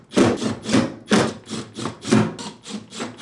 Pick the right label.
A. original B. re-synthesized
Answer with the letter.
A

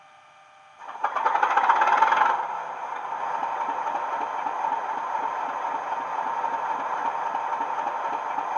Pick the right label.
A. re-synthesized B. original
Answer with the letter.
B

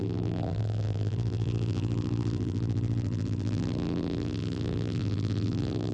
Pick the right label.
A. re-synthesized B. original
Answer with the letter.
A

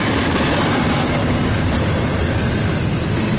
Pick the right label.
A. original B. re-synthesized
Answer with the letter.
A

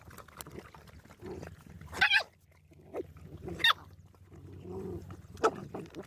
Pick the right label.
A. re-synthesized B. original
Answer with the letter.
B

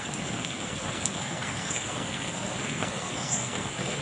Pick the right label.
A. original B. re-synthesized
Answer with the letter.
B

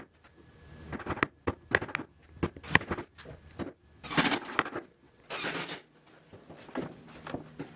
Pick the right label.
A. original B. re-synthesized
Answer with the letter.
A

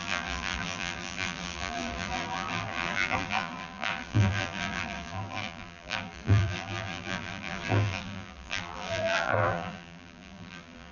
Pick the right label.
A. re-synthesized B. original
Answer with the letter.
A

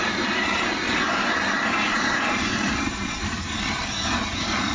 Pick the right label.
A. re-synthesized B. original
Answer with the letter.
A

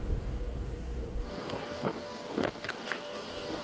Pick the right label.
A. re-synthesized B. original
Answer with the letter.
A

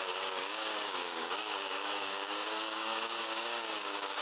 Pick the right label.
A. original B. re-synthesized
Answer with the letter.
B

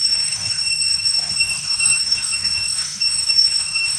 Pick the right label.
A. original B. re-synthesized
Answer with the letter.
B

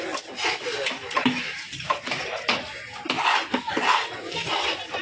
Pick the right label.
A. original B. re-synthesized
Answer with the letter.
A